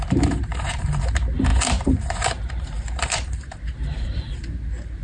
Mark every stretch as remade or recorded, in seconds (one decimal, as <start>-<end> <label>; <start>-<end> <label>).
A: 0.0-5.0 remade